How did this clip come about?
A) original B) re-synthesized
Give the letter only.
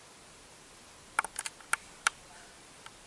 A